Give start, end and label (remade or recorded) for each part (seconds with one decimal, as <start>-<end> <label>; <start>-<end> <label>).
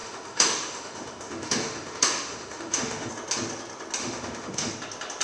0.0-3.1 remade; 3.1-4.0 recorded; 4.0-4.7 remade; 4.7-5.2 recorded